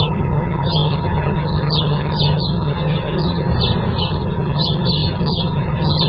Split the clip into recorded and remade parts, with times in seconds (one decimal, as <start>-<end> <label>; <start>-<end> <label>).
0.0-3.5 remade; 3.5-4.0 recorded; 4.0-6.1 remade